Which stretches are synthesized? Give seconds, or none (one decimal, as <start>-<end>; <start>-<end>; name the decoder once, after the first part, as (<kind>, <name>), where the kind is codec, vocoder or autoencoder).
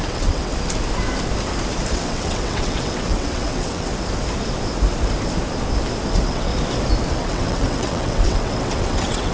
0.0-0.5 (vocoder, WaveNeXt); 1.9-3.9; 6.1-6.5; 7.1-9.3